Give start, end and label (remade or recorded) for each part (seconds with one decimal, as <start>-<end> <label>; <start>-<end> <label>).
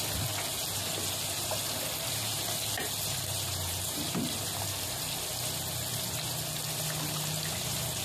0.0-0.5 recorded; 0.5-4.6 remade; 4.6-8.0 recorded